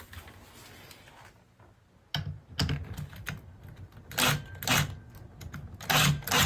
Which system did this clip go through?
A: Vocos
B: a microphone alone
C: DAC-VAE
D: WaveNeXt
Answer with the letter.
B